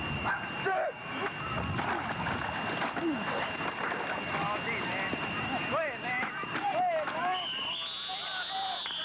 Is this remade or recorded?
recorded